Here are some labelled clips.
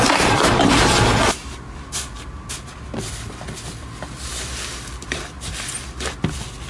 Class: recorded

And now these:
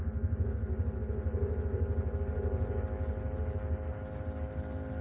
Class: recorded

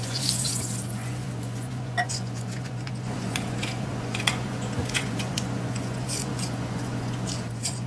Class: remade